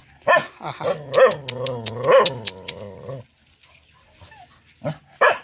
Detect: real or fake real